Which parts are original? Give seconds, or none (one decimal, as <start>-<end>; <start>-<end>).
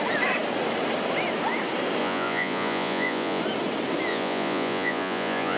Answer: 0.0-2.0; 3.4-4.1